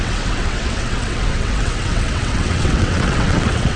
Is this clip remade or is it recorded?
remade